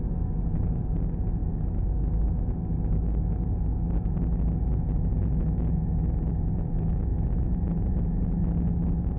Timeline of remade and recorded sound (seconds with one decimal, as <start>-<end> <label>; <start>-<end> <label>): 0.0-9.2 recorded